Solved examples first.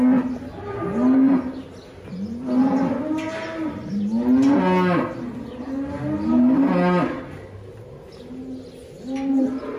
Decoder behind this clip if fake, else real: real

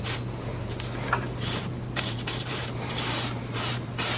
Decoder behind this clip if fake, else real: fake, vocoder, BigVGAN v2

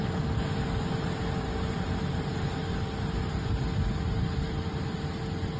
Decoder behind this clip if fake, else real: real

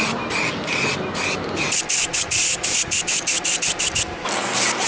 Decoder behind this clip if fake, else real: real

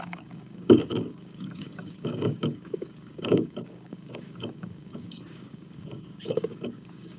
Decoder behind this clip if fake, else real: fake, codec, DAC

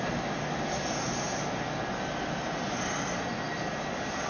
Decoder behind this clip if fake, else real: real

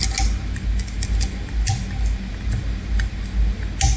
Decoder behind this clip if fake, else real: real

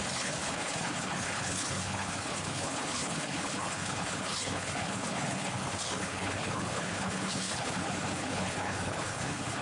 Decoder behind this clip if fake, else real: fake, codec, HILCodec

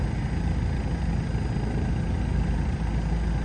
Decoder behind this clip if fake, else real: real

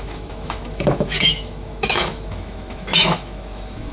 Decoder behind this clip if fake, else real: fake, autoencoder, DAC-VAE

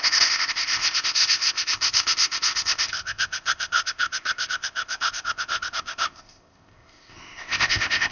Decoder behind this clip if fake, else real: fake, codec, ZipCodec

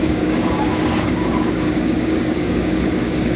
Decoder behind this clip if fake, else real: fake, codec, DAC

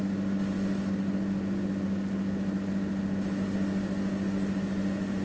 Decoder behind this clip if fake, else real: real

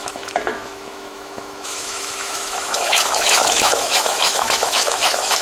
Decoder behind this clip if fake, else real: fake, autoencoder, DAC-VAE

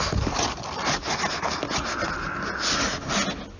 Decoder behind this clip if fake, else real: real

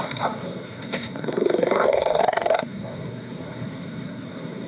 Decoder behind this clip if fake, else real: fake, codec, SNAC